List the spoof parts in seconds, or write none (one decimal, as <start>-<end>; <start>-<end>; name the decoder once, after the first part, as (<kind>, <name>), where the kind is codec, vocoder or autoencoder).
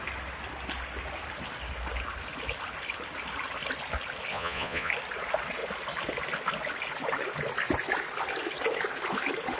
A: 4.3-4.9 (vocoder, Vocos)